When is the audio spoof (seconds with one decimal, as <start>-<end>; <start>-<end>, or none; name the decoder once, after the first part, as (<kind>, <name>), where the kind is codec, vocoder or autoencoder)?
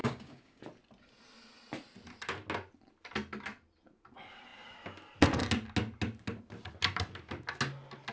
0.0-0.6 (codec, DAC)